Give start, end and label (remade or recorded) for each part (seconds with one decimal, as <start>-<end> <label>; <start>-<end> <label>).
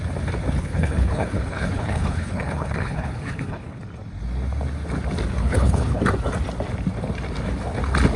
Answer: 0.0-0.6 recorded; 0.6-3.8 remade; 3.8-5.4 recorded; 5.4-6.0 remade; 6.0-8.2 recorded